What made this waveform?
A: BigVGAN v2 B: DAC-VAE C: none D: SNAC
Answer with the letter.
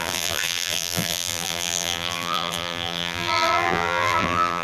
A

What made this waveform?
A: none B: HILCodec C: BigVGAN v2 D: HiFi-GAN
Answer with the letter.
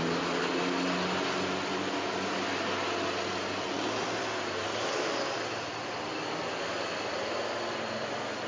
A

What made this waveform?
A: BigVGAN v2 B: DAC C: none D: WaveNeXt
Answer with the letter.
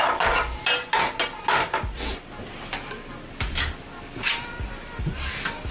C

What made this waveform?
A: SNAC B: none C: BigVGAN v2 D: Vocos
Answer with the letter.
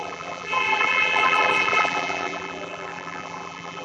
C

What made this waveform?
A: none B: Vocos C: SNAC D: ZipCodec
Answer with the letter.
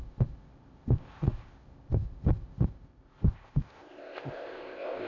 D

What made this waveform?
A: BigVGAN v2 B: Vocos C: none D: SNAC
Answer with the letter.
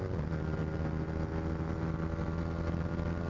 C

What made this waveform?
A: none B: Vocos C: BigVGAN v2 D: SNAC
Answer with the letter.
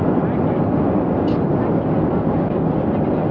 A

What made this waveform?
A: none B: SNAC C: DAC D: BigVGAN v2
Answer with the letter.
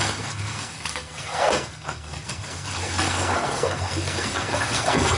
B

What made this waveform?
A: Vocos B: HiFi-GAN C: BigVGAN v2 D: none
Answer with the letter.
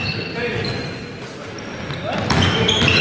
D